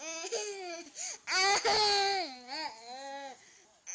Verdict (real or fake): real